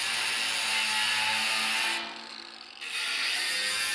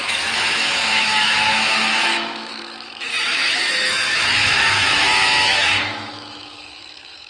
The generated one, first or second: second